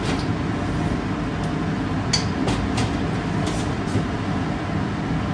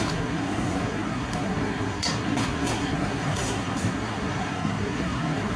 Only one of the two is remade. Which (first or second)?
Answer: second